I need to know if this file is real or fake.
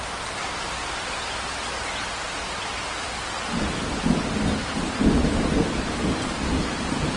real